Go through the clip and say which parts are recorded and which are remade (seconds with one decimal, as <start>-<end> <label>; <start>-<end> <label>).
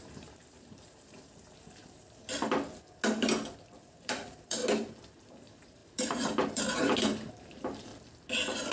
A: 0.0-2.2 remade; 2.2-3.8 recorded; 3.8-4.6 remade; 4.6-5.2 recorded; 5.2-7.9 remade; 7.9-8.7 recorded